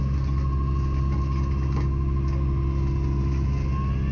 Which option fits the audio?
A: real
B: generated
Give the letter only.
A